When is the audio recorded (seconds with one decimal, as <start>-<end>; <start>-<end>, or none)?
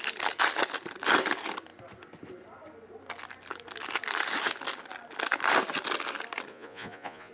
0.0-6.5